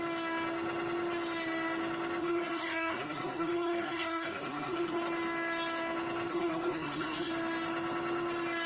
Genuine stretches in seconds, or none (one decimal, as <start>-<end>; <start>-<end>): 0.0-2.2; 5.0-6.3; 7.3-8.7